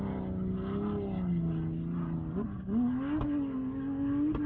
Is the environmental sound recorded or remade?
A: recorded